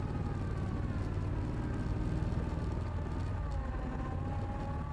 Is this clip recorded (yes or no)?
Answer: yes